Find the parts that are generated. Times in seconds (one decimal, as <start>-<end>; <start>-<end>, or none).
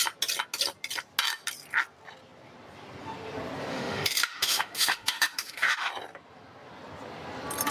3.7-5.9